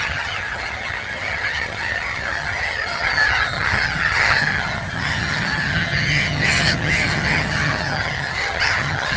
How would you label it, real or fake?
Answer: fake